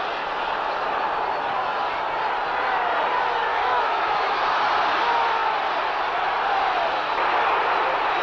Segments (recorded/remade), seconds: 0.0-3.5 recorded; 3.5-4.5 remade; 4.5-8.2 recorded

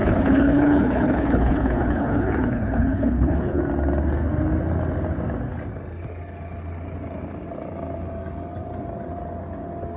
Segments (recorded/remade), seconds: 0.0-3.6 remade; 3.6-10.0 recorded

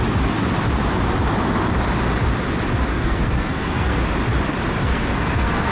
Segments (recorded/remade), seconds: 0.0-2.9 recorded; 2.9-4.0 remade; 4.0-4.8 recorded; 4.8-5.7 remade